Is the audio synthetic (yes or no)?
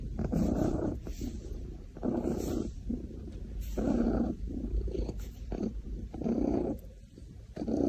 yes